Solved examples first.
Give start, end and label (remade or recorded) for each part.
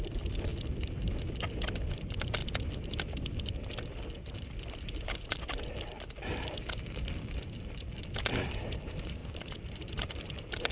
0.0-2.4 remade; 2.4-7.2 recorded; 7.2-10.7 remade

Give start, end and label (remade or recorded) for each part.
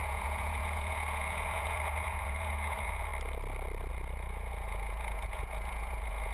0.0-3.1 remade; 3.1-3.9 recorded; 3.9-6.3 remade